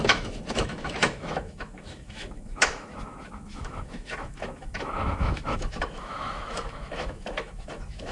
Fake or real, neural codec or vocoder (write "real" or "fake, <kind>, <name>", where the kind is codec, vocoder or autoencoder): fake, autoencoder, DAC-VAE